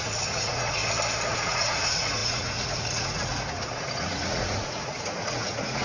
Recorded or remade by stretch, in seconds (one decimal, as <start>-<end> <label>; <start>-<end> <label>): 0.0-0.8 remade; 0.8-1.3 recorded; 1.3-5.8 remade